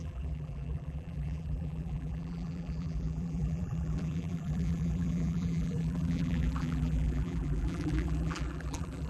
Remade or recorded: remade